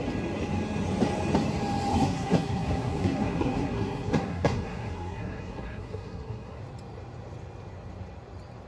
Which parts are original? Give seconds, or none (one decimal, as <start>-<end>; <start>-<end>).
0.0-1.9; 6.6-8.7